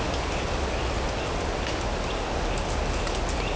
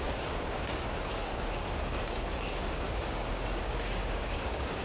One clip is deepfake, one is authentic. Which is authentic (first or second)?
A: first